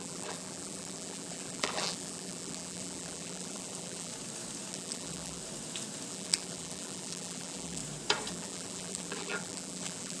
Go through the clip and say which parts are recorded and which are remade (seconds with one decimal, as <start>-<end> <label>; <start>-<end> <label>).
0.0-4.1 remade; 4.1-4.7 recorded; 4.7-5.4 remade; 5.4-6.1 recorded; 6.1-7.8 remade; 7.8-8.3 recorded; 8.3-10.2 remade